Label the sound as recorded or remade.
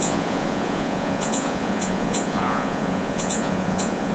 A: remade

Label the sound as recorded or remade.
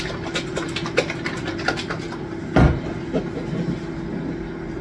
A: recorded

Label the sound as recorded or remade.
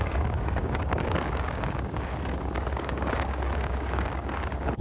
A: remade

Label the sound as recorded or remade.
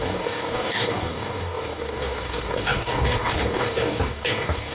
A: remade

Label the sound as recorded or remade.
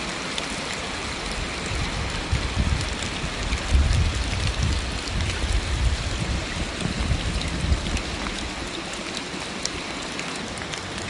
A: recorded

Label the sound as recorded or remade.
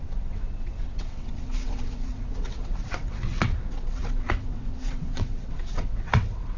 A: remade